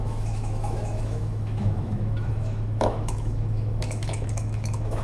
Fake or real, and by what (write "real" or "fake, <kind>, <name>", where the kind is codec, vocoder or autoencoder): fake, autoencoder, DAC-VAE